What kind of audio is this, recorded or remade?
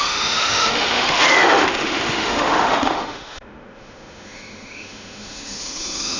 remade